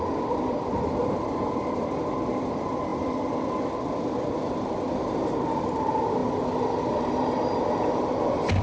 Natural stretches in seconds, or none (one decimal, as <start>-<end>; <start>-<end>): 0.0-8.6